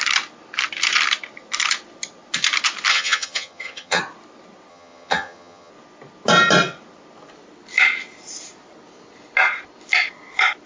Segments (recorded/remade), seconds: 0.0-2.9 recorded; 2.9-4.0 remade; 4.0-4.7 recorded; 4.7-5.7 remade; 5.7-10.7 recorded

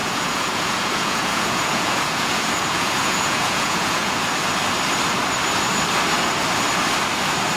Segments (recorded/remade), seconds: 0.0-4.1 remade; 4.1-7.6 recorded

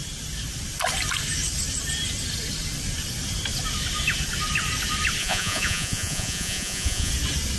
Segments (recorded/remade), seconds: 0.0-5.2 recorded; 5.2-7.1 remade; 7.1-7.6 recorded

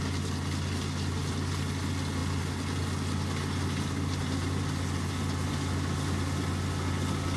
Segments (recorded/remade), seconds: 0.0-7.4 recorded

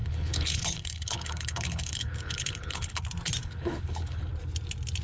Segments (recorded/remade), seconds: 0.0-3.0 remade; 3.0-3.4 recorded; 3.4-4.3 remade; 4.3-5.0 recorded